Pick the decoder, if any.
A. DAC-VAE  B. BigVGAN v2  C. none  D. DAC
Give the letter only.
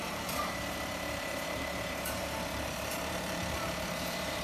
B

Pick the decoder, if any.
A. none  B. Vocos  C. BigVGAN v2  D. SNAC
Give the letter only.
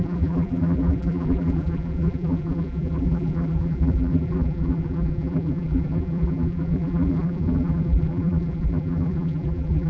C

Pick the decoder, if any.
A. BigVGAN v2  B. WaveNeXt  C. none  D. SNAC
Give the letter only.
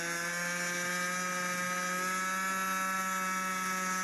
C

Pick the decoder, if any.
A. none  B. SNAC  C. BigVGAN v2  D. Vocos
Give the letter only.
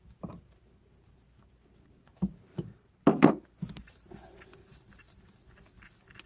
A